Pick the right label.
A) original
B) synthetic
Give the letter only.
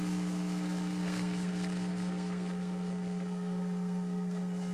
B